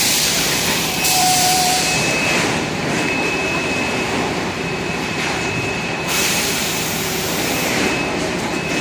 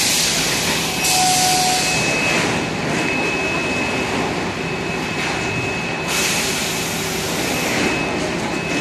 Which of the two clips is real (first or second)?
second